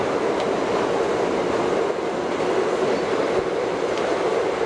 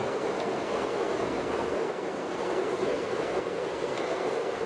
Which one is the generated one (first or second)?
second